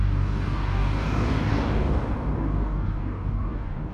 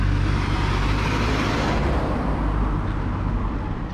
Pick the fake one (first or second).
first